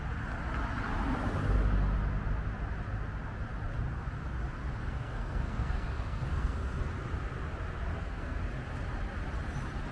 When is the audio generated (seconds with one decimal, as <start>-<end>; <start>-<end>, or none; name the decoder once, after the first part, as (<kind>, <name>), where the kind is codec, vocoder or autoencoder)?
4.8-6.8 (codec, SNAC); 7.9-8.4